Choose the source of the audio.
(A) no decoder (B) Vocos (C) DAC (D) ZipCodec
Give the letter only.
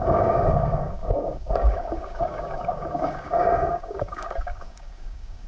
C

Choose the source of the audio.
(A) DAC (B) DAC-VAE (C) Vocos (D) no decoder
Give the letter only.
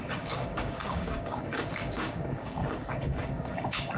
A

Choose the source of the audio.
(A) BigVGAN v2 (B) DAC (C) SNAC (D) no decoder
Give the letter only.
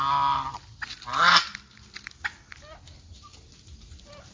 D